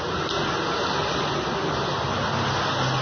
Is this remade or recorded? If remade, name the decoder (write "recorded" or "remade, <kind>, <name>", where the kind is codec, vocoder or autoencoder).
recorded